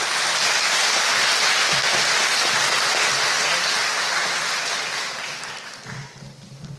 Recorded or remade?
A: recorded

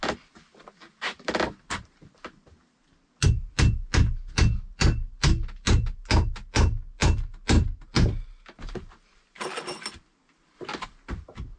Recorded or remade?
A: recorded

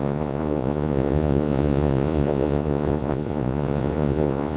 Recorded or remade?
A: remade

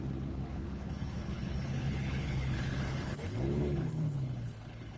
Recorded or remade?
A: remade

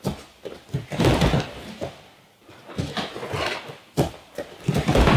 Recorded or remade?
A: remade